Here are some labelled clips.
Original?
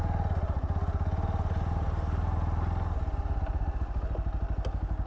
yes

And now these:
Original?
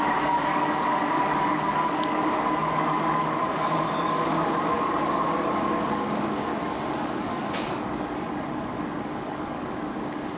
no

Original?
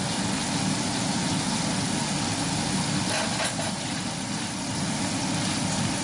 yes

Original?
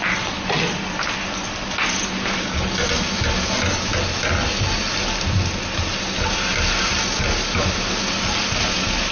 yes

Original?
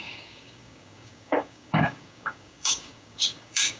no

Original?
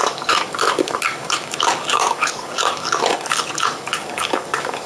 no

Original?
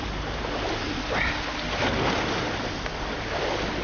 yes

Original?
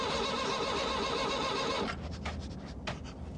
yes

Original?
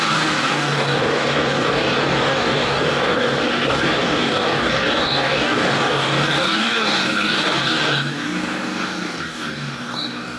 no